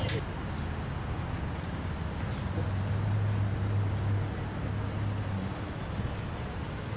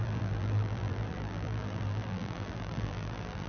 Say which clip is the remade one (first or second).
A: second